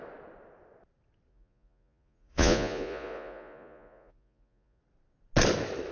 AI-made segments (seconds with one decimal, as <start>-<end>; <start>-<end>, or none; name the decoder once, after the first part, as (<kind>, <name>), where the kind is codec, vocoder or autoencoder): 1.3-4.8 (vocoder, Vocos)